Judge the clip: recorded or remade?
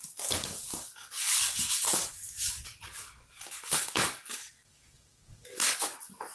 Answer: remade